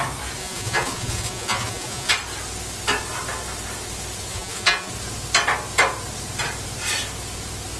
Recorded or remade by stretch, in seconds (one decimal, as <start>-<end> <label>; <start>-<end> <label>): 0.0-0.4 recorded; 0.4-2.1 remade; 2.1-4.3 recorded; 4.3-4.9 remade; 4.9-7.8 recorded